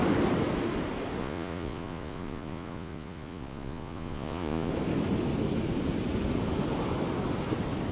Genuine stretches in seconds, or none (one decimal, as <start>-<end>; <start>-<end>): 0.0-1.2; 4.7-7.9